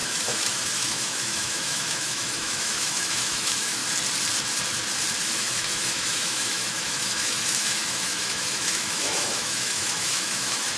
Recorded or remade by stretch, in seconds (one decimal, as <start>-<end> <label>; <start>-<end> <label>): 0.0-3.8 remade; 3.8-5.2 recorded; 5.2-10.8 remade